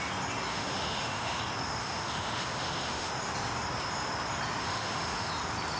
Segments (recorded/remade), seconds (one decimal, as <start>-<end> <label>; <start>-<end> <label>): 0.0-0.5 recorded; 0.5-1.4 remade; 1.4-1.8 recorded; 1.8-3.1 remade; 3.1-4.6 recorded; 4.6-5.3 remade; 5.3-5.8 recorded